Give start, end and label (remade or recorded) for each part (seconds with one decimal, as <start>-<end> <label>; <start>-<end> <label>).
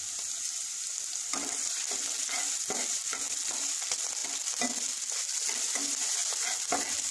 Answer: 0.0-7.1 recorded